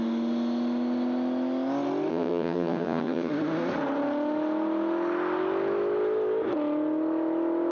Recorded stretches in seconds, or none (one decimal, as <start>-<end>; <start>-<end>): 0.0-2.1; 3.3-7.7